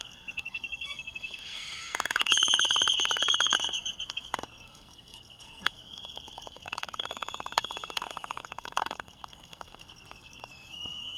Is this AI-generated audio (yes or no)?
yes